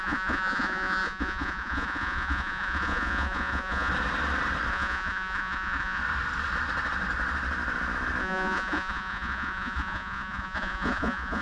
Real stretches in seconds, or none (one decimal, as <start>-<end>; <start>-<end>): 3.9-4.7; 6.0-8.2